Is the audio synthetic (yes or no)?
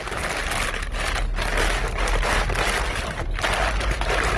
no